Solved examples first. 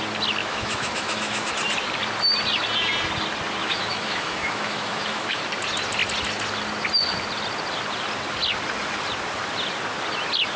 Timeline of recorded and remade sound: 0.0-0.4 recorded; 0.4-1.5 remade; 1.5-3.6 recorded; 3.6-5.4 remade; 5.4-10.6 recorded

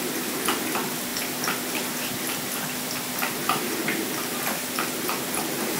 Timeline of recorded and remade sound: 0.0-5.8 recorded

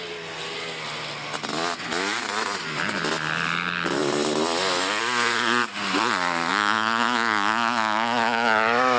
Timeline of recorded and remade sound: 0.0-6.5 recorded; 6.5-9.0 remade

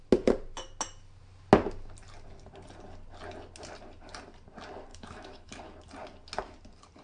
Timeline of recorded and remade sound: 0.0-4.9 recorded; 4.9-5.6 remade; 5.6-7.0 recorded

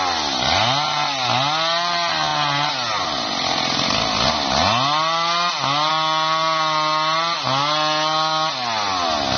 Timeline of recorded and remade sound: 0.0-9.4 recorded